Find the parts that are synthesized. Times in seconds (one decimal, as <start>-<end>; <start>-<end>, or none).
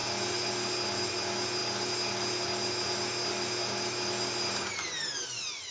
none